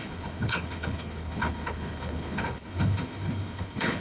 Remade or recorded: remade